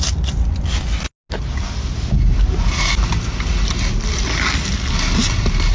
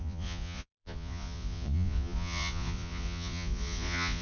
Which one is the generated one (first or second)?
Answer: second